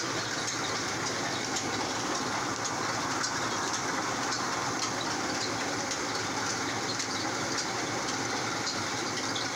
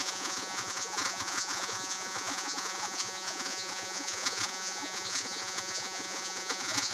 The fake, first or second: second